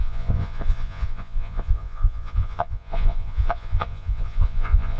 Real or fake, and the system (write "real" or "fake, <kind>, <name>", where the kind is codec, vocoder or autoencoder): fake, vocoder, Vocos